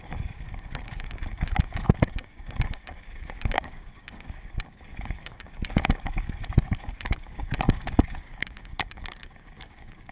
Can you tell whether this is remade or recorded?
remade